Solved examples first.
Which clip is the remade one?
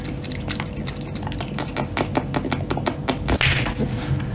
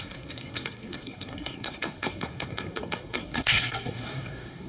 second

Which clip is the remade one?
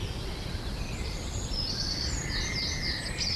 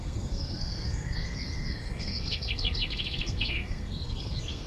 second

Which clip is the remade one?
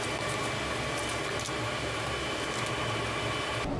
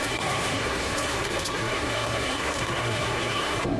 second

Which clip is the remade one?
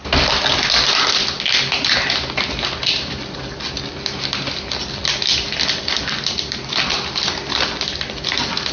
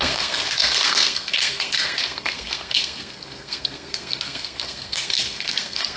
second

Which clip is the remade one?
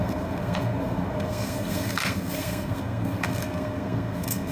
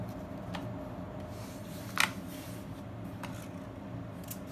first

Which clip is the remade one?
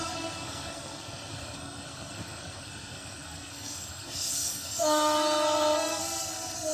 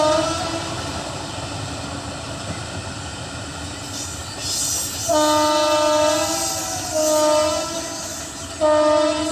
first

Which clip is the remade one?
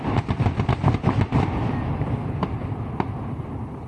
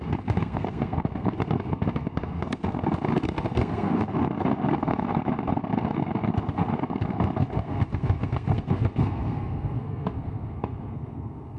second